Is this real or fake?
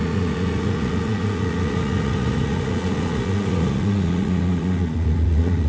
fake